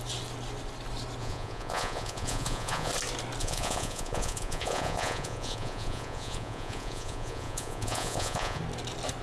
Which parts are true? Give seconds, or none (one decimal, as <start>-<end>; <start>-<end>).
0.0-1.2; 2.9-3.4; 8.6-9.2